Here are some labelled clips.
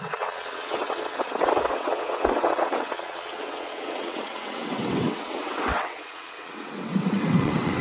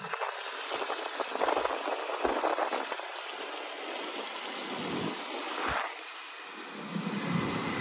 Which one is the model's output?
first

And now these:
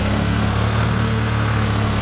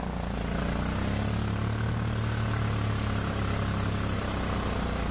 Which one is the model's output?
first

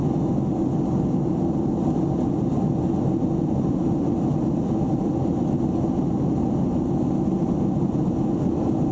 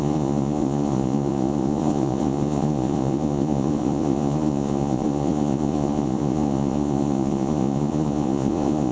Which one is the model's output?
second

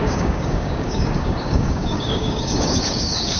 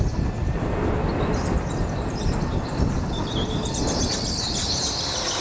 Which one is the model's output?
first